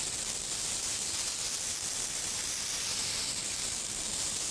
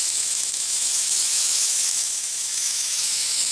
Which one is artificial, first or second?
second